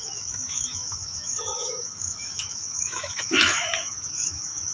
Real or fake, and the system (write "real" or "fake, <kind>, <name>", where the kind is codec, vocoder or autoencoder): fake, autoencoder, DAC-VAE